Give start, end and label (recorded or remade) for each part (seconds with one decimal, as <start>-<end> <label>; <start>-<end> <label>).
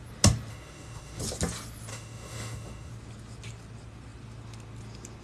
0.0-0.5 recorded; 0.5-1.2 remade; 1.2-1.9 recorded; 1.9-2.9 remade; 2.9-5.2 recorded